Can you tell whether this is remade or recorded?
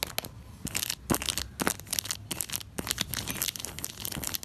recorded